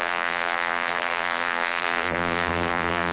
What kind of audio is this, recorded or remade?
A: remade